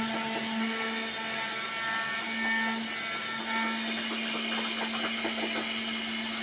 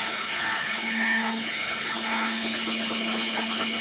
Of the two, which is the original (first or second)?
first